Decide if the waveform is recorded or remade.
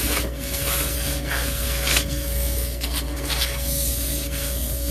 remade